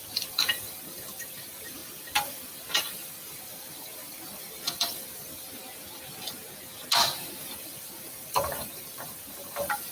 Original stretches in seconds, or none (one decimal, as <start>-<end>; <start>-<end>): 5.6-7.4